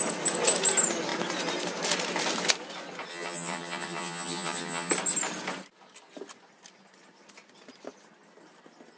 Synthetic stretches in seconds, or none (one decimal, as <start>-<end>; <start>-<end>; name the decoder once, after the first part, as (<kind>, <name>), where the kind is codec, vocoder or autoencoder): 3.1-4.9 (vocoder, HiFi-GAN)